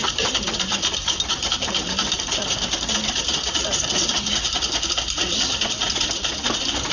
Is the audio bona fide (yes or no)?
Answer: no